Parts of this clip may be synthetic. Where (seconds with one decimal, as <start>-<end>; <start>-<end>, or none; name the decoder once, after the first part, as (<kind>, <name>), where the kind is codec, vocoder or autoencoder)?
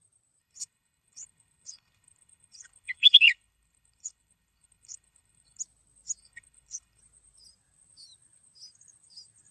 0.4-5.6 (codec, HILCodec); 6.2-7.0